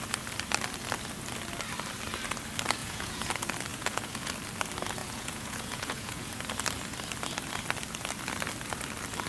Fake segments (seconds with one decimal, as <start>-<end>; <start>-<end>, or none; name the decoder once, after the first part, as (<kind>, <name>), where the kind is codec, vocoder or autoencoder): 2.8-3.3 (vocoder, Vocos); 3.7-4.3; 5.0-6.3